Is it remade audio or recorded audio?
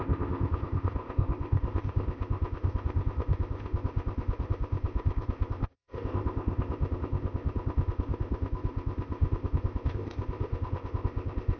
remade